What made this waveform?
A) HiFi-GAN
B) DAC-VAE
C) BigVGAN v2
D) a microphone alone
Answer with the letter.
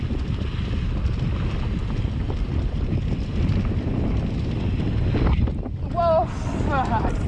D